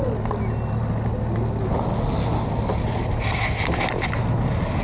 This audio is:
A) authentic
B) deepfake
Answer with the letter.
A